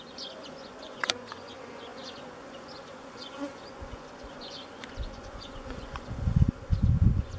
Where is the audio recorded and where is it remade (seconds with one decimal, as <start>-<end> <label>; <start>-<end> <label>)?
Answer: 0.0-7.4 remade